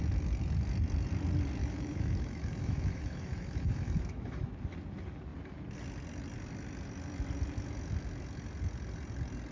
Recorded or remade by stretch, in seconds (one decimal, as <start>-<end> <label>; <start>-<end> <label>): 0.0-1.6 recorded; 1.6-4.5 remade; 4.5-9.5 recorded